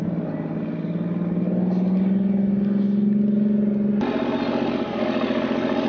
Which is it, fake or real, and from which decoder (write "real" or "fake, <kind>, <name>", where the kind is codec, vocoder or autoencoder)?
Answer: real